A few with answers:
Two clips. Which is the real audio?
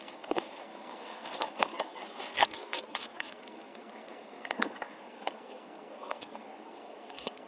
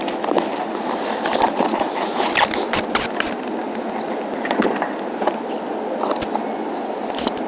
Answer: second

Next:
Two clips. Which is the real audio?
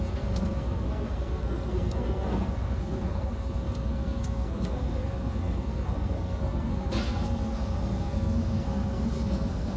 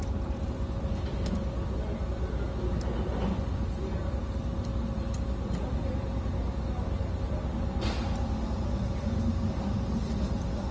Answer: second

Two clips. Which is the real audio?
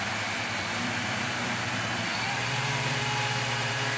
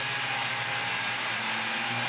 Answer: second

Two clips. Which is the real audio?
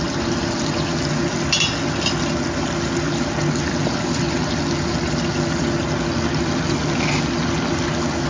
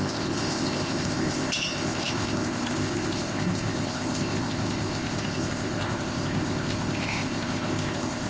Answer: first